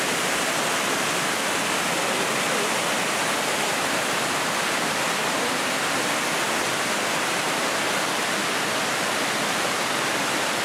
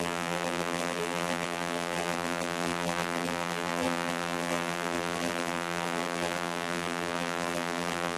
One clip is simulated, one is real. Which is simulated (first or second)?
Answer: second